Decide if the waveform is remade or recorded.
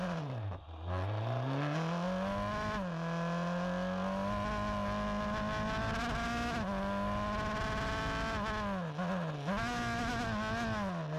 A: recorded